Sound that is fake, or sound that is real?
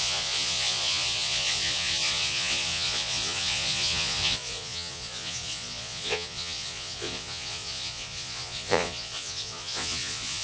fake